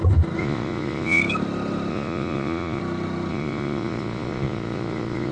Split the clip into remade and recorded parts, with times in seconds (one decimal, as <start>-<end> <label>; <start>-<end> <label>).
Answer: 0.0-0.4 recorded; 0.4-1.2 remade; 1.2-1.9 recorded; 1.9-2.8 remade; 2.8-3.3 recorded; 3.3-5.3 remade